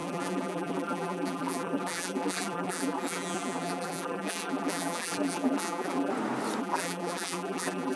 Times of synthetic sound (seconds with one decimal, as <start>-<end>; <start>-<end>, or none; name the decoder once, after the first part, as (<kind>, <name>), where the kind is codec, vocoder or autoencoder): 0.0-6.1 (vocoder, BigVGAN v2); 6.6-8.0